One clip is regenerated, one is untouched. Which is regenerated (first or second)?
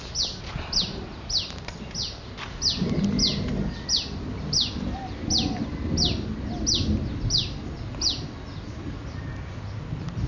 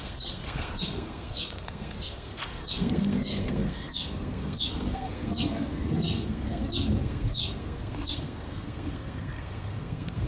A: second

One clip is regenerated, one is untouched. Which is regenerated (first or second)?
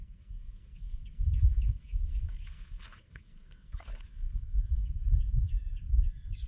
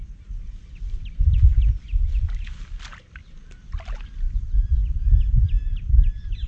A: first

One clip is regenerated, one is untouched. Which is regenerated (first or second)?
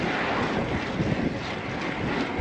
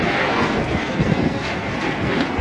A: second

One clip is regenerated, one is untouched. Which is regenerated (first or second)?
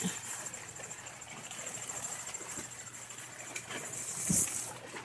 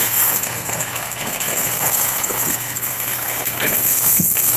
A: second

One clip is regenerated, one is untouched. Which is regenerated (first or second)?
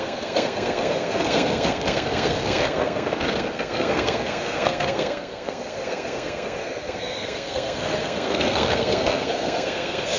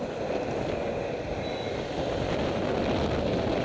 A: first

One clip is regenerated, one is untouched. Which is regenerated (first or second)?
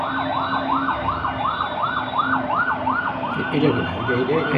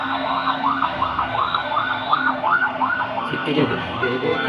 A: second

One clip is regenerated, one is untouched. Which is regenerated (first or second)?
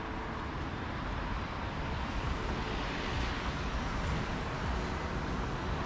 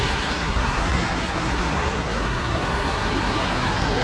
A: second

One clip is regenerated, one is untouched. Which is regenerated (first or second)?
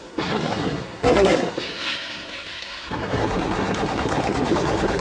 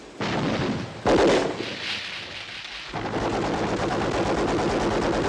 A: first